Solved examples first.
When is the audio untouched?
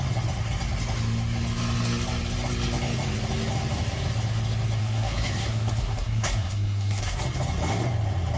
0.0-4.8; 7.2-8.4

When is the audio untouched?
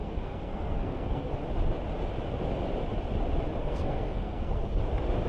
1.3-3.6; 4.8-5.3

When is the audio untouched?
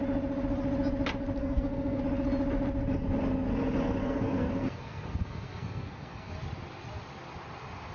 0.0-1.4; 2.0-4.0; 6.3-7.9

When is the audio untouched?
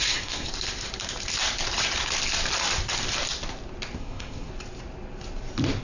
0.5-4.0; 4.5-5.8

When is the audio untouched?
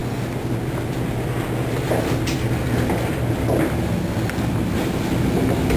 0.0-5.8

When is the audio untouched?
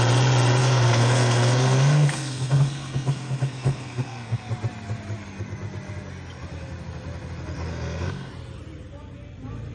0.0-0.6; 4.5-7.7; 8.3-9.7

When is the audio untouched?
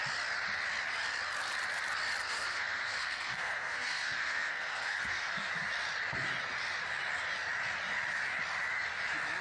0.0-2.2; 5.5-9.4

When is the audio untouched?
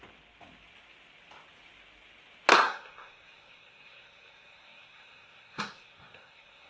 0.0-2.5